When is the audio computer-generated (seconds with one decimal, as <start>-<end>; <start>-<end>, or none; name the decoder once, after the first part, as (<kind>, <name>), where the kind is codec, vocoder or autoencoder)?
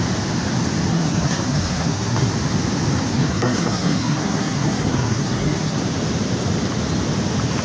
0.9-2.3 (codec, SNAC); 3.1-5.8